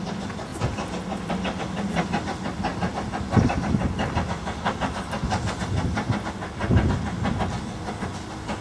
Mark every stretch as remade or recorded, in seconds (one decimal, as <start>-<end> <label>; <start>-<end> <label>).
0.0-8.6 recorded